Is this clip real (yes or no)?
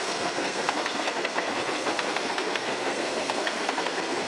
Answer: no